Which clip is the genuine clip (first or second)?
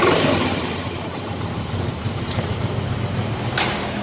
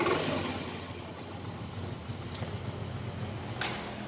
second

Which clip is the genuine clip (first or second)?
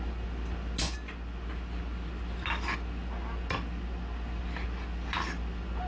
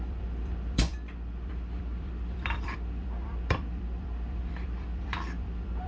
first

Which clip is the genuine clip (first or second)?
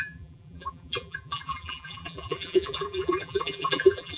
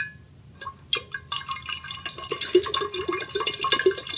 second